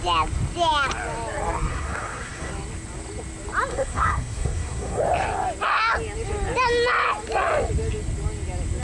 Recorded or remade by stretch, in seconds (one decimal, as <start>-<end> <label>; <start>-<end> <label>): 0.0-1.7 recorded; 1.7-2.5 remade; 2.5-3.7 recorded; 3.7-5.0 remade; 5.0-8.8 recorded